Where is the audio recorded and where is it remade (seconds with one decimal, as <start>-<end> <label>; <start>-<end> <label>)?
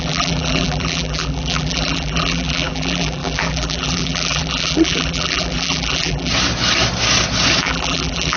0.0-6.3 remade; 6.3-7.6 recorded; 7.6-8.4 remade